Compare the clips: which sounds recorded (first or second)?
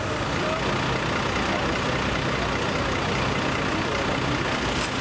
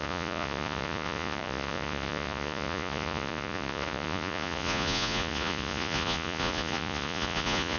first